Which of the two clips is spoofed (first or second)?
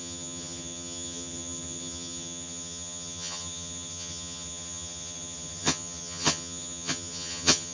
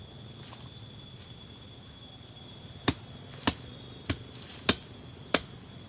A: first